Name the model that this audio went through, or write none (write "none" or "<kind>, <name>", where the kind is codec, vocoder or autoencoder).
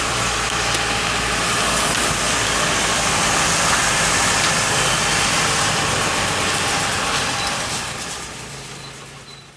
vocoder, BigVGAN v2